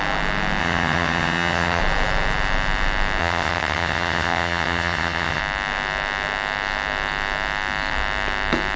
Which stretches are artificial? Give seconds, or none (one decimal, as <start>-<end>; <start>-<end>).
0.6-1.8; 3.2-5.4